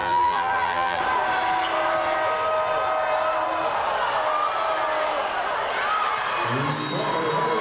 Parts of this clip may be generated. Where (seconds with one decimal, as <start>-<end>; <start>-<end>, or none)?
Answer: 0.0-1.0